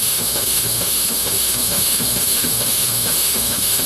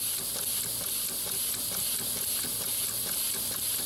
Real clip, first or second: second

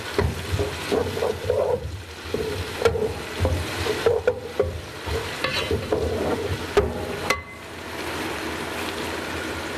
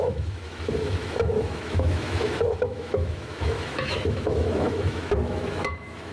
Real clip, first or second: first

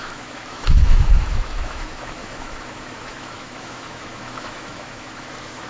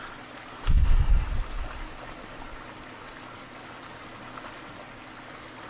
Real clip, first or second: second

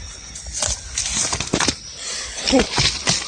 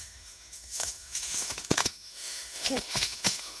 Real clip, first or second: first